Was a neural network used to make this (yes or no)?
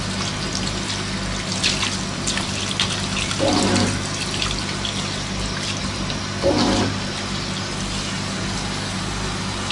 no